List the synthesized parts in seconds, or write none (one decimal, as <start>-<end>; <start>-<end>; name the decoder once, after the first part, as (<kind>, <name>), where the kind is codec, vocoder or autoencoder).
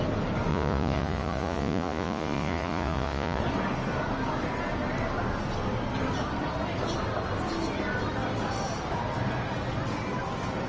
0.5-3.4 (vocoder, Vocos)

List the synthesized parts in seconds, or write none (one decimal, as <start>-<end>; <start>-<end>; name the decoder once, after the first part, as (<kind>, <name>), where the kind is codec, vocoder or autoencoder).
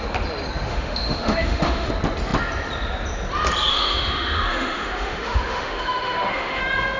0.7-1.9 (autoencoder, DAC-VAE); 3.7-6.6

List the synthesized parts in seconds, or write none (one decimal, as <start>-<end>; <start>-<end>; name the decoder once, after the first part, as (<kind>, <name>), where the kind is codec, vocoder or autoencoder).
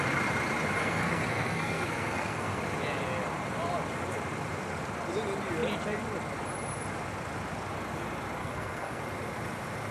0.8-2.6 (codec, SNAC); 8.4-9.0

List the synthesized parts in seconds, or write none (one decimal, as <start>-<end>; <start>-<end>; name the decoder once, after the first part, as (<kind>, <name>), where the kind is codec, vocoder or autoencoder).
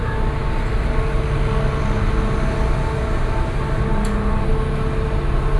none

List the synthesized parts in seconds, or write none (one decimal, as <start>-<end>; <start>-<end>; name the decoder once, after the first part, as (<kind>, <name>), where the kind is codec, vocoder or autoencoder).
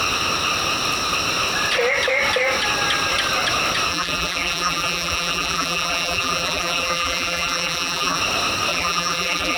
3.9-8.2 (vocoder, BigVGAN v2); 8.7-9.6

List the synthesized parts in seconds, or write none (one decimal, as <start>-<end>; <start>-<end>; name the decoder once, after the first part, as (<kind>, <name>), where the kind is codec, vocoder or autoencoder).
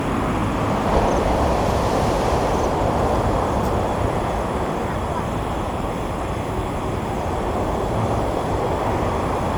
0.0-0.4 (vocoder, BigVGAN v2); 1.1-9.6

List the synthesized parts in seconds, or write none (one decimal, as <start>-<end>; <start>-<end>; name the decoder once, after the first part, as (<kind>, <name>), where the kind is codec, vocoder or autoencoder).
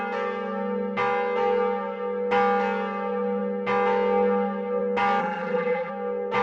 5.2-5.9 (vocoder, BigVGAN v2)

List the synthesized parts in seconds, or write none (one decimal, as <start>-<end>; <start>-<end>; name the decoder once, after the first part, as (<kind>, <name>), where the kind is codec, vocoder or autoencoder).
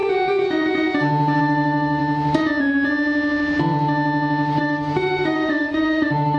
1.4-2.0 (autoencoder, DAC-VAE); 4.6-6.4